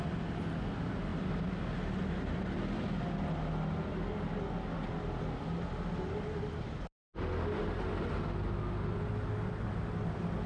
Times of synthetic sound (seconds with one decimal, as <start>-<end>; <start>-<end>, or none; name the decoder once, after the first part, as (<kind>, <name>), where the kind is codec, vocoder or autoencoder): none